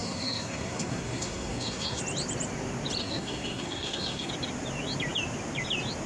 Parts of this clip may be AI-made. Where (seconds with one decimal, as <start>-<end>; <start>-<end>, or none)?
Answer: 0.0-2.0; 3.0-4.3